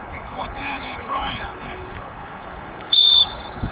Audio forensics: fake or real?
fake